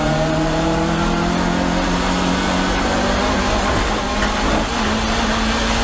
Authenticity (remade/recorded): recorded